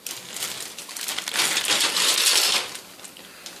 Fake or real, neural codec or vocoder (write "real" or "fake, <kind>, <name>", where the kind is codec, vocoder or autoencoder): real